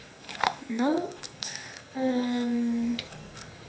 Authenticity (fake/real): fake